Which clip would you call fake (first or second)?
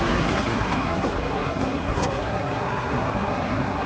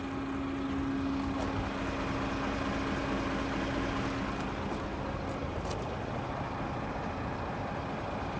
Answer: first